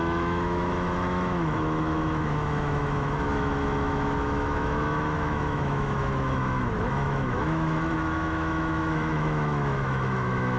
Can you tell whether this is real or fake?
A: fake